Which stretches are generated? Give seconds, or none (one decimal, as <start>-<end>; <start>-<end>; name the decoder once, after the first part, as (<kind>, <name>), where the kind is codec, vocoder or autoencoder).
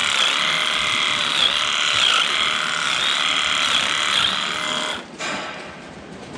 none